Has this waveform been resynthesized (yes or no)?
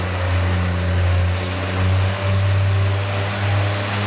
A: no